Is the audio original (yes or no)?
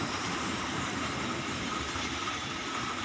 no